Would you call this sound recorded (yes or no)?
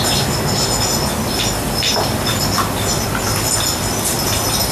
yes